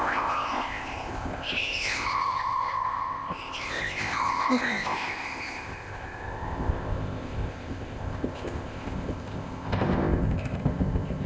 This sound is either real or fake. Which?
fake